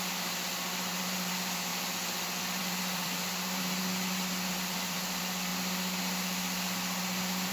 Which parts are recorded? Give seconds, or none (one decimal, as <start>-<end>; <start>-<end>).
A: 1.7-2.6; 5.5-7.5